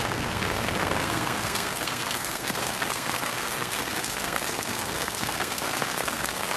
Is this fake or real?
fake